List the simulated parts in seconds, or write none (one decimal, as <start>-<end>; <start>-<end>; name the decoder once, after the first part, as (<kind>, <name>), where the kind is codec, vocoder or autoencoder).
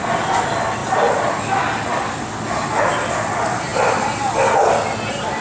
3.7-4.5 (vocoder, BigVGAN v2)